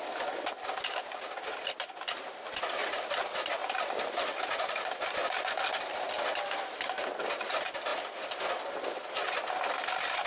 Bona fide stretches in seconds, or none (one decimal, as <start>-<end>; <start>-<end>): 0.0-10.3

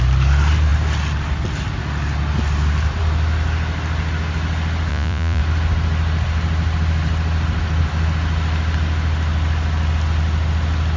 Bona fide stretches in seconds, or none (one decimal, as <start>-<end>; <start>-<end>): 0.0-4.9; 5.4-11.0